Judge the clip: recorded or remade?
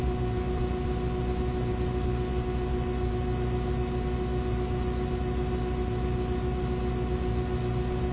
recorded